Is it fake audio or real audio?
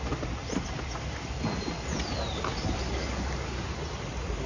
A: real